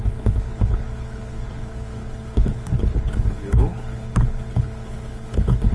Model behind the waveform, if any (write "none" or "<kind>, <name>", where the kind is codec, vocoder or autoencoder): codec, HILCodec